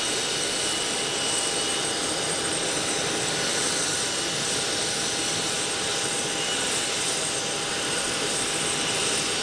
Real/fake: fake